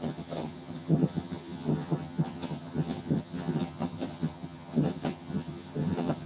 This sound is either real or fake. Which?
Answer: fake